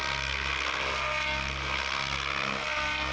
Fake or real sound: real